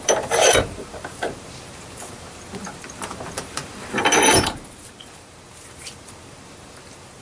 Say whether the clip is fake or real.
fake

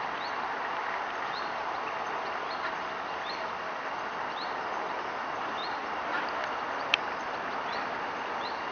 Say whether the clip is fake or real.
real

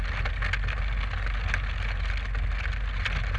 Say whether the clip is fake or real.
real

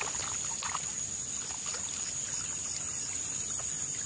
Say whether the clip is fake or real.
real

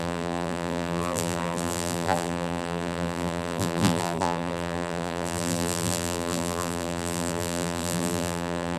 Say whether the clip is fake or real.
fake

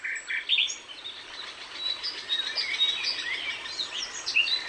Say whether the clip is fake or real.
real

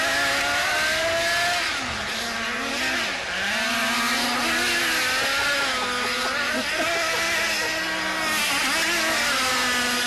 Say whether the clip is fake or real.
real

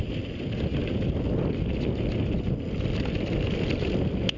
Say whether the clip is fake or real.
real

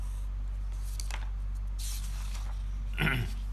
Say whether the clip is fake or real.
real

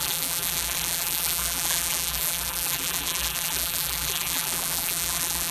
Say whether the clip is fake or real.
fake